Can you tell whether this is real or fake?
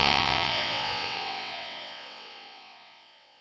fake